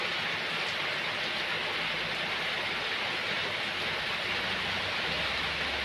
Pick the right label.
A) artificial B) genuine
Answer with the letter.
B